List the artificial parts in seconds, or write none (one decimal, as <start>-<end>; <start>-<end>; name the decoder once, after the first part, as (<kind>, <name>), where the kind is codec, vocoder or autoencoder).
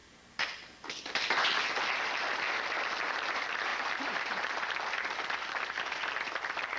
3.7-4.6 (vocoder, BigVGAN v2)